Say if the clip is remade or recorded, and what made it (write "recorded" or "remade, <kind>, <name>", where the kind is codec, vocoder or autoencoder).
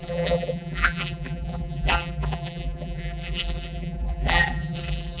remade, vocoder, BigVGAN v2